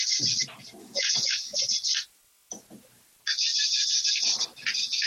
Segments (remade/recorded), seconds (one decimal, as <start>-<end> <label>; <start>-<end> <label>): 0.0-0.8 recorded; 0.8-1.6 remade; 1.6-5.1 recorded